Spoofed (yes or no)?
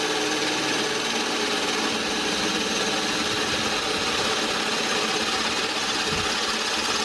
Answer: no